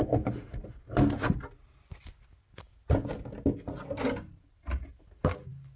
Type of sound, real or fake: real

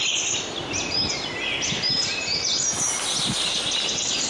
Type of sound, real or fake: real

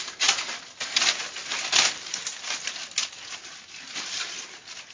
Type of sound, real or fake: real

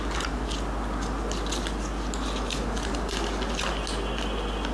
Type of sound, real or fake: real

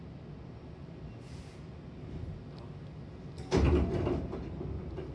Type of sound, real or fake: real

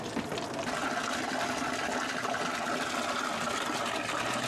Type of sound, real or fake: real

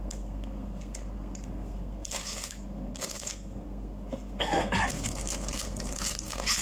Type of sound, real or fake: fake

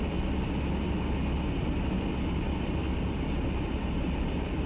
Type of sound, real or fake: real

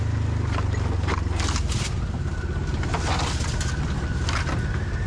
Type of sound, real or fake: real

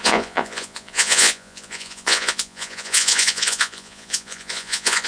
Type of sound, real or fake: fake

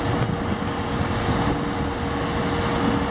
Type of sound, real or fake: real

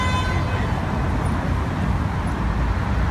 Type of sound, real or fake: real